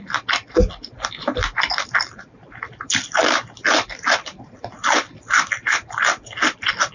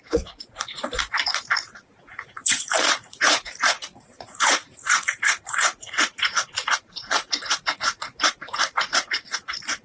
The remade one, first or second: second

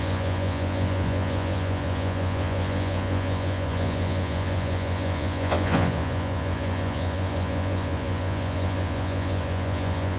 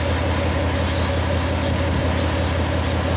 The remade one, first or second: first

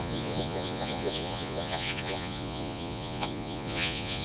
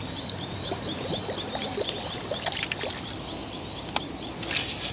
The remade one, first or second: first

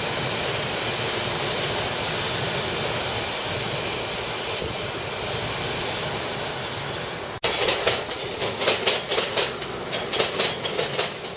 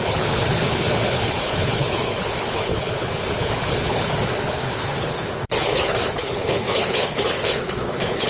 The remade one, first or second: second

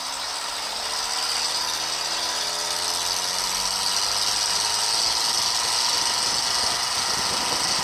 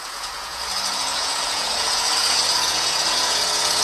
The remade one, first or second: second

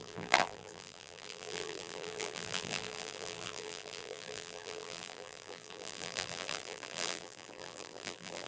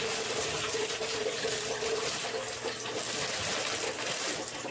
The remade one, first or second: first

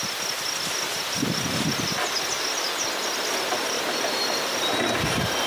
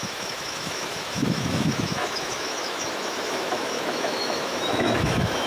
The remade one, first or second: second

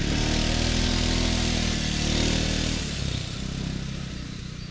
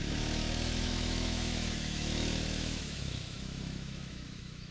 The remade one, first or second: second